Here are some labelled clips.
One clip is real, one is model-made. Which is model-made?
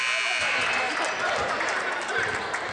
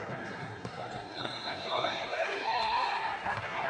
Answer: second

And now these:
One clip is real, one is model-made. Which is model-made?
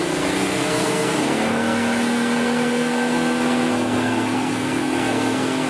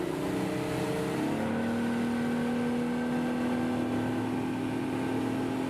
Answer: first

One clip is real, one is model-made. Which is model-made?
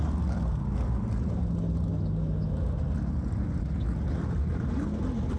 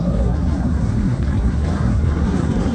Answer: second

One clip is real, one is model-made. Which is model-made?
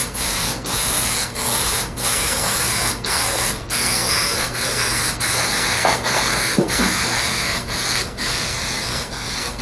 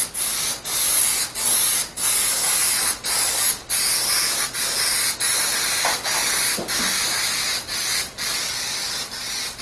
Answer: first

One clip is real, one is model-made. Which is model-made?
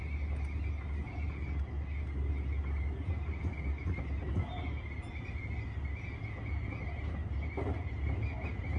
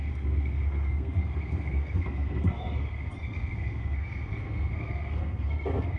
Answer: second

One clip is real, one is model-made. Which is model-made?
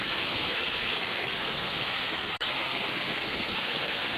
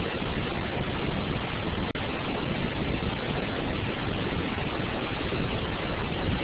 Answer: first